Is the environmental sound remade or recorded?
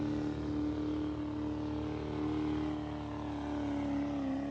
recorded